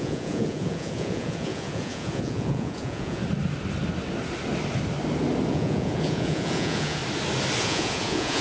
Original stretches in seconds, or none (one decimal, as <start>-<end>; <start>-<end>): 3.2-5.5; 7.0-7.6